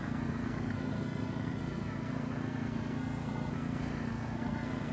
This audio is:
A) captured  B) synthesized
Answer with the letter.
B